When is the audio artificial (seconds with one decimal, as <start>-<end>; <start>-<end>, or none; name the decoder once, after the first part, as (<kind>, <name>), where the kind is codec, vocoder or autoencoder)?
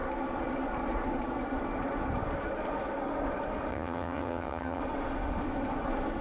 3.7-4.8 (vocoder, HiFi-GAN)